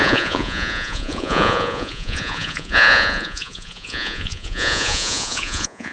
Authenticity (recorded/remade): remade